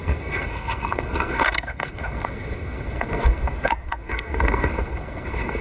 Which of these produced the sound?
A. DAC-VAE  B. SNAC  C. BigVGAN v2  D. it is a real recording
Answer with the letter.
B